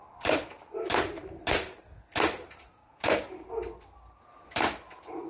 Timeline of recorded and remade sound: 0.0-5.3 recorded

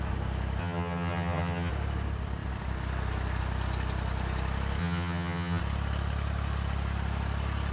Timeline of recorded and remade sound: 0.0-0.6 recorded; 0.6-1.7 remade; 1.7-4.8 recorded; 4.8-5.6 remade; 5.6-7.7 recorded

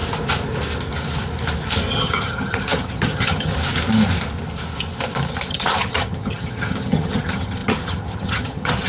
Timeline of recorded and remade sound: 0.0-1.9 recorded; 1.9-3.5 remade; 3.5-5.5 recorded; 5.5-8.9 remade

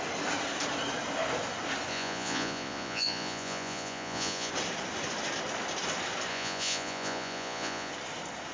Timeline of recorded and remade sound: 0.0-1.9 recorded; 1.9-4.5 remade; 4.5-6.3 recorded; 6.3-7.9 remade; 7.9-8.5 recorded